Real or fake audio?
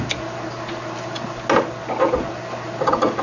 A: real